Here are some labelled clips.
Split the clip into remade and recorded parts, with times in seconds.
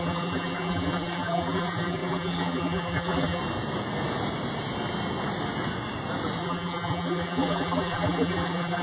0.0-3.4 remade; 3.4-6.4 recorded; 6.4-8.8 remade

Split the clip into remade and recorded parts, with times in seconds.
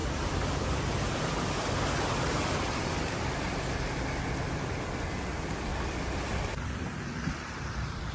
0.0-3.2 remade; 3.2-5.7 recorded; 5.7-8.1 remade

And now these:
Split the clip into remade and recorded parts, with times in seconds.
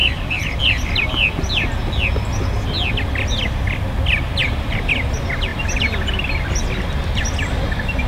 0.0-0.6 remade; 0.6-4.4 recorded; 4.4-4.9 remade; 4.9-8.1 recorded